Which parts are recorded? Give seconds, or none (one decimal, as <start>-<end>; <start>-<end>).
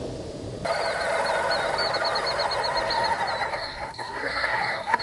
0.0-3.5